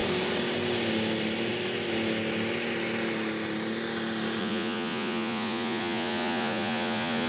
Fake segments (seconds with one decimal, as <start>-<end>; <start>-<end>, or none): 4.4-7.3